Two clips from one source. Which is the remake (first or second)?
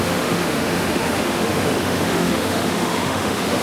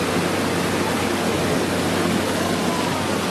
first